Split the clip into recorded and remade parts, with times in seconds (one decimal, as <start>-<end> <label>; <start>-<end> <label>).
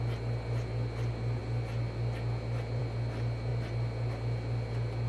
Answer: 0.0-5.1 recorded